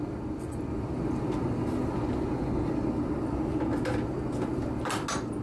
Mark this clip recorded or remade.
recorded